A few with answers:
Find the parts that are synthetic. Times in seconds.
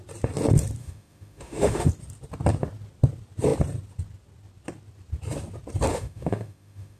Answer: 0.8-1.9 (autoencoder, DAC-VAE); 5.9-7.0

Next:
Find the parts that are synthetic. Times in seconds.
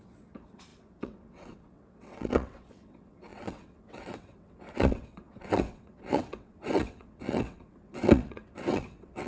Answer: 0.0-9.3 (vocoder, WaveNeXt)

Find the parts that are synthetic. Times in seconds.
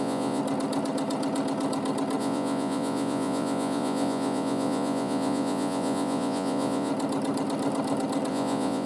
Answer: 0.0-0.4 (vocoder, Vocos); 2.2-6.9; 8.3-8.9